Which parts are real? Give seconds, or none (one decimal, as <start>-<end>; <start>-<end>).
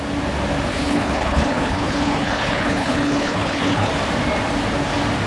0.0-0.7; 3.9-5.3